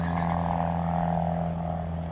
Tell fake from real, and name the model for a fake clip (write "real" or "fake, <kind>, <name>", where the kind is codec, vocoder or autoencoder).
real